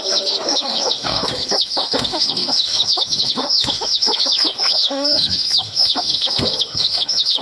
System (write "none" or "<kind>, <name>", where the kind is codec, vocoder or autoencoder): autoencoder, DAC-VAE